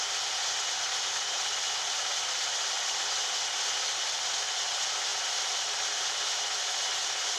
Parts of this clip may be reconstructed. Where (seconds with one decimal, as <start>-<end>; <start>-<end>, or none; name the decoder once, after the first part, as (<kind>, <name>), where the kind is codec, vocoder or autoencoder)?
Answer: none